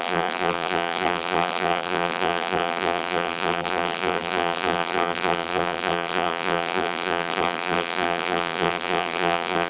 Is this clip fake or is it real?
fake